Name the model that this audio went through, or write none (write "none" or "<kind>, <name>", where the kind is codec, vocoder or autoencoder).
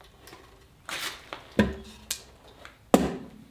none